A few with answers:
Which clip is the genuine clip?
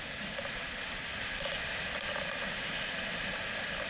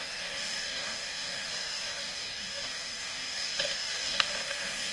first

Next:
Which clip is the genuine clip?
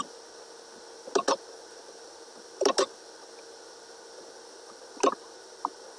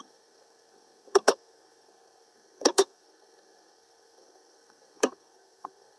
first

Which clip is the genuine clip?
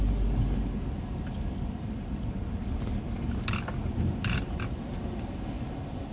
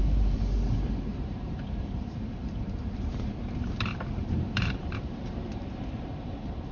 first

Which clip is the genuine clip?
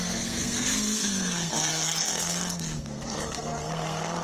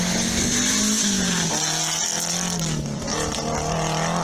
second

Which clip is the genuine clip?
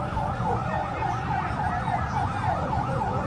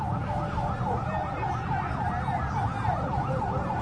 second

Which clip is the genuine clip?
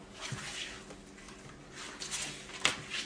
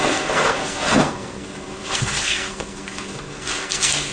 first